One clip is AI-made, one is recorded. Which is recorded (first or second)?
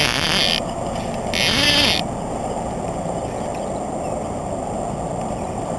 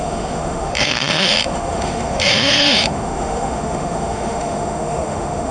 first